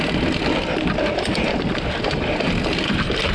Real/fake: real